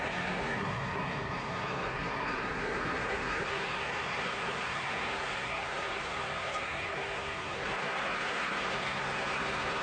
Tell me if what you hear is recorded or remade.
remade